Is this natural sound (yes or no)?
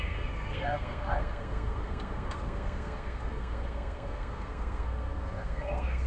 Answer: no